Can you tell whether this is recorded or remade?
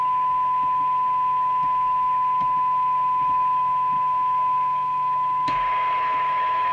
remade